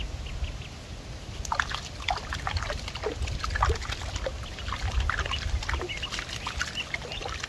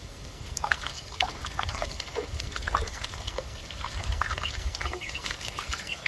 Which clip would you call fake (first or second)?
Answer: second